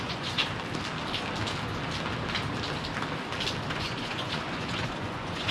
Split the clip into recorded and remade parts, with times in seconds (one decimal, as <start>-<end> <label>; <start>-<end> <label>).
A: 0.0-0.4 remade; 0.4-3.7 recorded; 3.7-5.5 remade